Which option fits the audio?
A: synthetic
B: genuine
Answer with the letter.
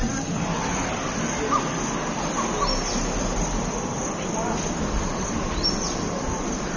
B